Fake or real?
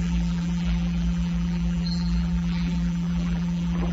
fake